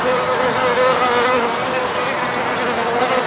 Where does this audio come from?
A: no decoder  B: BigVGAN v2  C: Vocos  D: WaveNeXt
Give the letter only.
A